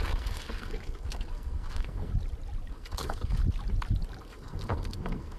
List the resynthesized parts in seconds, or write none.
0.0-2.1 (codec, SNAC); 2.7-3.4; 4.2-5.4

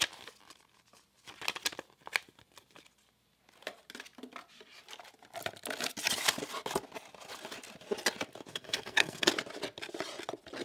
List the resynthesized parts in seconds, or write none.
8.5-9.3 (codec, SNAC)